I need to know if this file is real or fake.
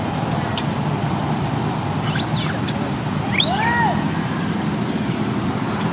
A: real